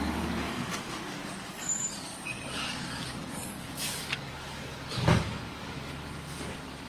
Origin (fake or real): fake